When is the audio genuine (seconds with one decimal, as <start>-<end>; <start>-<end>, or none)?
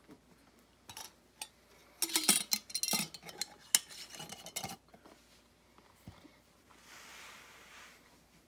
0.0-8.5